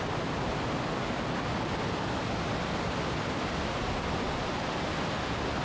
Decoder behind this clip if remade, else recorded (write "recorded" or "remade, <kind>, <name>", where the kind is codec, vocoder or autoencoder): recorded